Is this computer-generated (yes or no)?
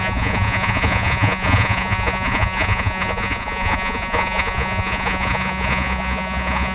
yes